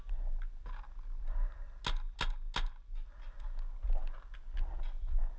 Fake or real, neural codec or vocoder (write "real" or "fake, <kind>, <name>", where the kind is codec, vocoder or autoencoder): real